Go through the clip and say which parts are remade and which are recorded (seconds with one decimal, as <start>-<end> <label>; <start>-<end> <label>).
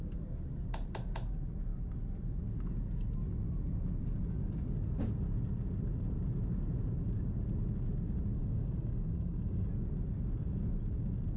0.0-8.4 recorded; 8.4-9.7 remade; 9.7-11.4 recorded